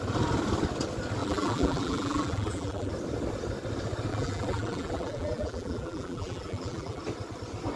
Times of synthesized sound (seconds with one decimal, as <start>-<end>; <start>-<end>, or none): 1.2-2.9; 4.1-7.0